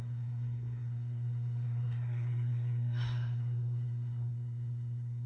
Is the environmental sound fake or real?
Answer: fake